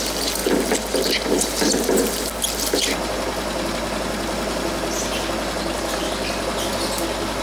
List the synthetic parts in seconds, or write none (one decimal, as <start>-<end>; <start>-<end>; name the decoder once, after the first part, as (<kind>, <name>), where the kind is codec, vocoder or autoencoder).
none